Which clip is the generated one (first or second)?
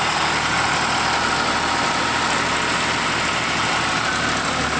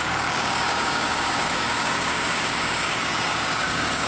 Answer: second